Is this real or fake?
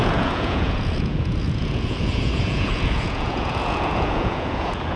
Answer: fake